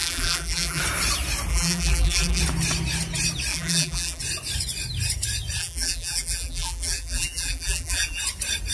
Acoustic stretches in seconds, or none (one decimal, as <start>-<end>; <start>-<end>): 0.8-1.5; 2.4-3.5; 4.2-5.6; 8.2-8.7